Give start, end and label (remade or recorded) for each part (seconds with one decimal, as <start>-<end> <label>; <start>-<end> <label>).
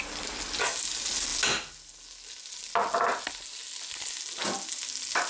0.0-5.3 recorded